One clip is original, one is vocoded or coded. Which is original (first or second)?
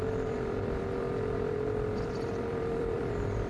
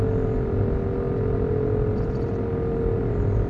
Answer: second